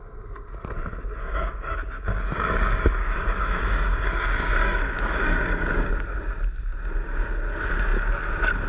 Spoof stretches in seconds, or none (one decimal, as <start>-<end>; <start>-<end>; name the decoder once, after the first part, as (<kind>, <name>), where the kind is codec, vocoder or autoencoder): 1.2-5.9 (codec, DAC)